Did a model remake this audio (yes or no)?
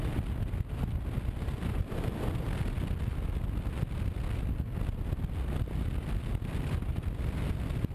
no